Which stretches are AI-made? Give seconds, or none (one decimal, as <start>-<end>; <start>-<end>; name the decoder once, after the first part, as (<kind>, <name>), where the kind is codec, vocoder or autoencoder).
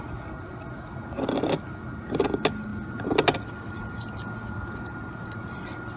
none